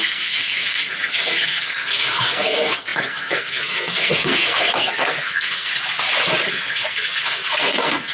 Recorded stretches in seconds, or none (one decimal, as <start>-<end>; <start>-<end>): 5.7-6.5